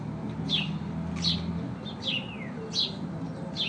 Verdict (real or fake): real